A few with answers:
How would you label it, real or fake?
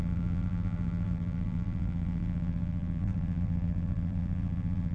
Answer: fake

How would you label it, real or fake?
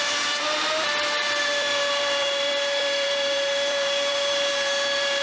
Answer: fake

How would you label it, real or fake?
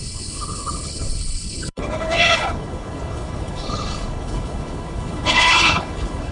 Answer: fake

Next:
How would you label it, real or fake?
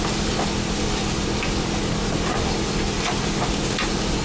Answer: real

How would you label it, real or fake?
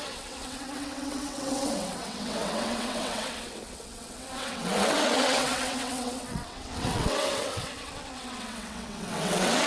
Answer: fake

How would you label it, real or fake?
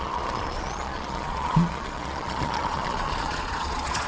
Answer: fake